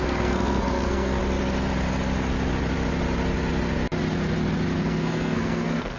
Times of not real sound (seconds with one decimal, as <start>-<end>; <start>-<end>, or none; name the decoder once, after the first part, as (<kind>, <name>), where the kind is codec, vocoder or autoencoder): 0.0-1.2 (codec, SNAC); 4.8-6.0